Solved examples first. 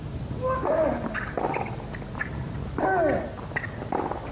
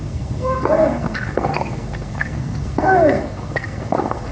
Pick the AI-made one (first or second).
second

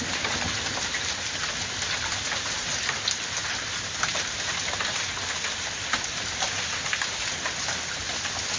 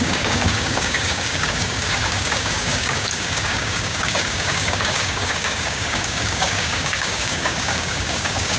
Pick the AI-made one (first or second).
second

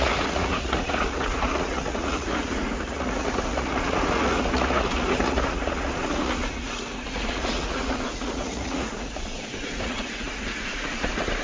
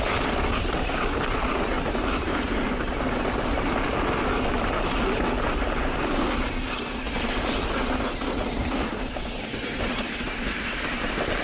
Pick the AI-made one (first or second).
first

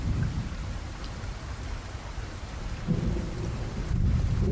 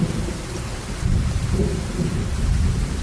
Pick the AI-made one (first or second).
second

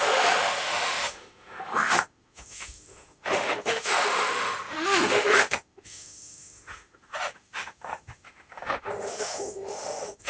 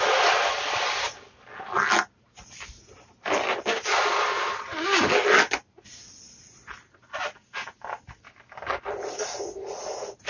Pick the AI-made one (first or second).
first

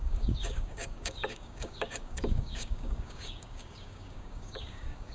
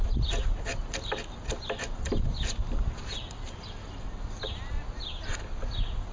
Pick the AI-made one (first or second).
first